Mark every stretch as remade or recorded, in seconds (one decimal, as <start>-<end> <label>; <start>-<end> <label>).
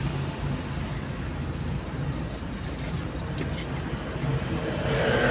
0.0-5.3 recorded